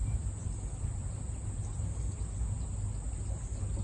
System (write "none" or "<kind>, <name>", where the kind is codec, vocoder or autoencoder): none